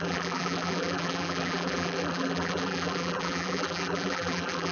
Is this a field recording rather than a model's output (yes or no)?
no